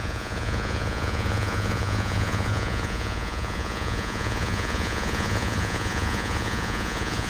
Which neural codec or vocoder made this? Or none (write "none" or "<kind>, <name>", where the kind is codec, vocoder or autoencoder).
vocoder, Vocos